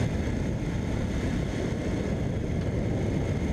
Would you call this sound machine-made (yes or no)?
no